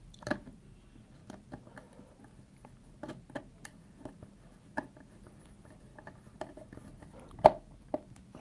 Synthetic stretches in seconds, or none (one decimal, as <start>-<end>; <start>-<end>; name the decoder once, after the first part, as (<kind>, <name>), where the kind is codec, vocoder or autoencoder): 0.0-1.2 (vocoder, BigVGAN v2); 5.4-5.9; 7.0-8.4

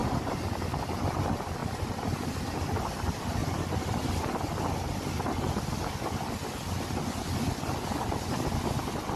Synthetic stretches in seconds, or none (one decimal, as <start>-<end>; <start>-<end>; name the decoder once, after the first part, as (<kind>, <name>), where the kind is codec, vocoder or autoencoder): 0.0-0.6 (vocoder, BigVGAN v2)

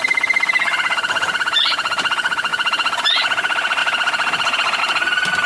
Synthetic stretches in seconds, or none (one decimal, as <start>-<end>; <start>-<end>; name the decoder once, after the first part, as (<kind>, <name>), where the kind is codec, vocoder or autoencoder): 2.5-3.0 (vocoder, BigVGAN v2); 3.8-4.8

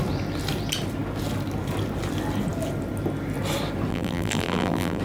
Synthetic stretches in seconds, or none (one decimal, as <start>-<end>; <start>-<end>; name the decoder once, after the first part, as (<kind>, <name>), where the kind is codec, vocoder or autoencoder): 3.9-5.0 (vocoder, BigVGAN v2)